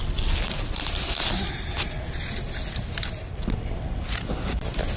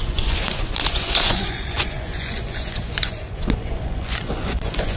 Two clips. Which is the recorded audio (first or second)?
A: first